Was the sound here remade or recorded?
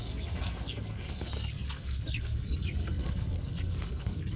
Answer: remade